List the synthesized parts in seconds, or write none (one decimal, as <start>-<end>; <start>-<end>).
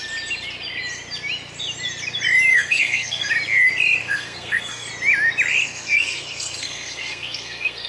2.5-3.3; 4.0-4.9; 5.6-7.9